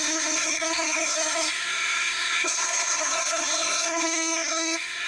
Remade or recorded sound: remade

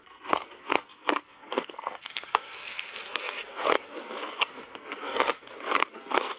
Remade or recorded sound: remade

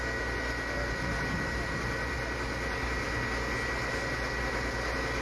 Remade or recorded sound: recorded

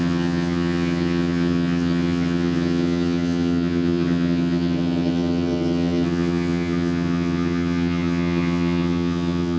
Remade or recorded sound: remade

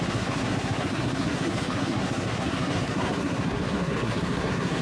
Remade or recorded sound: remade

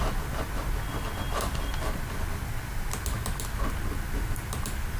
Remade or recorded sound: recorded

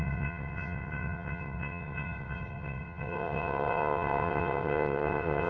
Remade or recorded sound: remade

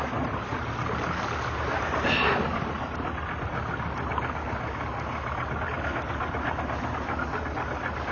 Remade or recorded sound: recorded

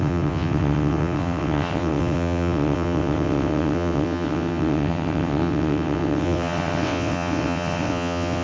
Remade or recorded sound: remade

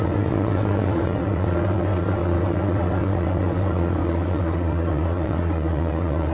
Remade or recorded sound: remade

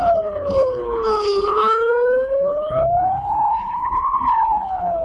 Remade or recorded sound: remade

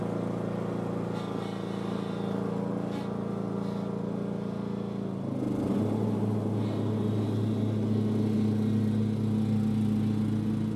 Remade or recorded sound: recorded